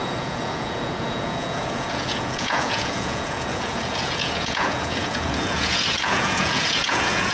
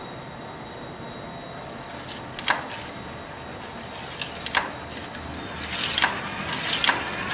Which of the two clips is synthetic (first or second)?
first